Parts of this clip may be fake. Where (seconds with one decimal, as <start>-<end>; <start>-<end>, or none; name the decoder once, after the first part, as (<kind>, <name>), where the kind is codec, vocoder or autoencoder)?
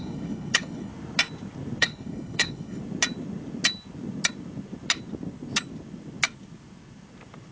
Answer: 0.0-0.9 (codec, HILCodec); 1.8-2.8